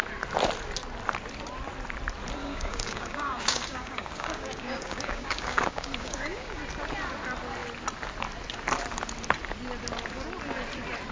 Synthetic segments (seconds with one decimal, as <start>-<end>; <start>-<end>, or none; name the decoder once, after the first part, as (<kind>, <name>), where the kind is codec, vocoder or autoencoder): 2.4-6.6 (codec, DAC)